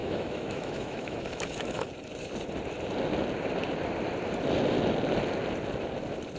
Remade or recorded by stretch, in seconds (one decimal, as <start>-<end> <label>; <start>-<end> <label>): 0.0-1.9 remade; 1.9-6.4 recorded